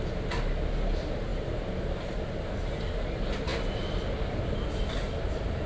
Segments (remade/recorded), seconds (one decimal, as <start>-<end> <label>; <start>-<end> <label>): 0.0-5.7 recorded